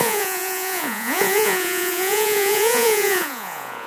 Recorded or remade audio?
remade